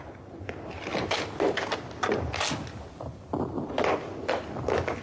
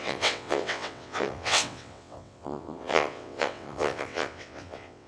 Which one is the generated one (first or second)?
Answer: second